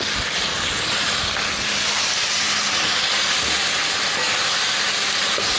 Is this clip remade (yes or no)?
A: no